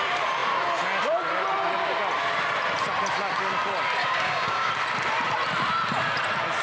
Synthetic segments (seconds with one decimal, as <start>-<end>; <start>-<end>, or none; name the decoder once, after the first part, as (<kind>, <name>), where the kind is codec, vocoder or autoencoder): 4.0-4.7 (codec, DAC)